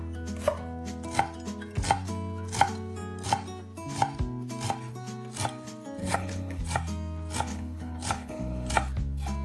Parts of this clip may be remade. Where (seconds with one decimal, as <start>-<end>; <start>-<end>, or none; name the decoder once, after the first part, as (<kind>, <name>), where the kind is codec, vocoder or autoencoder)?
6.0-6.6 (codec, HILCodec); 7.5-8.7

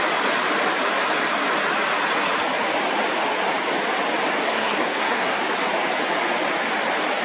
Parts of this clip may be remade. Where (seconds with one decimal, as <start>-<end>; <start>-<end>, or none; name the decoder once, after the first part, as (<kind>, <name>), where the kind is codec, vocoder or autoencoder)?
4.4-5.4 (codec, SNAC)

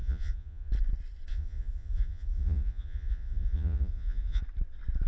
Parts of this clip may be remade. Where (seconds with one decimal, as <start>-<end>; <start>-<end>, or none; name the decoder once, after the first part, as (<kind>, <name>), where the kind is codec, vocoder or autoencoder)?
0.0-0.7 (vocoder, Vocos); 1.3-4.4